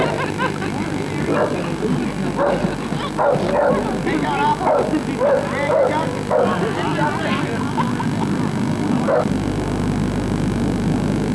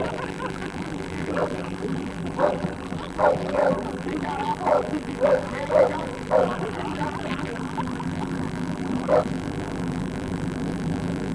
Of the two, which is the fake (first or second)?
second